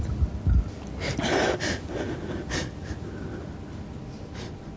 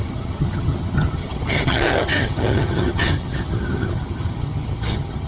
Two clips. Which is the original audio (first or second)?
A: first